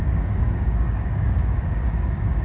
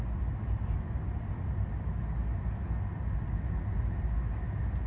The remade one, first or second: first